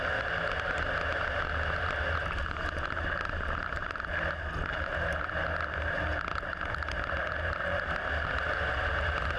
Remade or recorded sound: recorded